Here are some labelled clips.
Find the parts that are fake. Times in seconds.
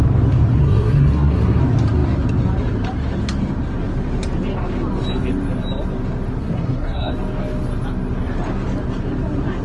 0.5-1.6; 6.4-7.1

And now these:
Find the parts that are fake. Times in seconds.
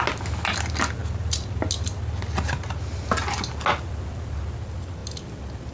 none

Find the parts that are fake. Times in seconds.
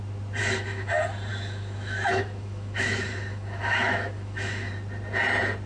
0.4-0.9; 1.3-4.7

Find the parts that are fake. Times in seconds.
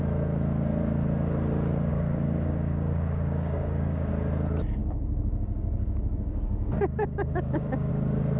1.9-4.1; 4.8-7.9